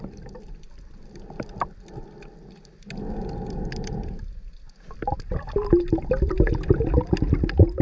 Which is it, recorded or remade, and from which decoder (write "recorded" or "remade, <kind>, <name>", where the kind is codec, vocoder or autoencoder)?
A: recorded